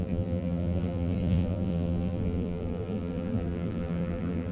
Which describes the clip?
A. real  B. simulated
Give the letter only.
B